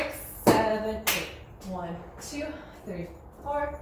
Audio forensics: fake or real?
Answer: real